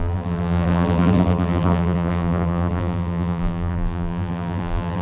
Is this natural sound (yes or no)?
no